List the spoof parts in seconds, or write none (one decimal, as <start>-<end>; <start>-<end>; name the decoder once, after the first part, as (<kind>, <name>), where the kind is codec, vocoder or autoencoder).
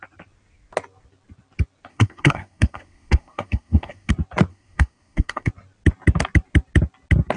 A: 1.9-4.1 (codec, SNAC); 4.5-5.5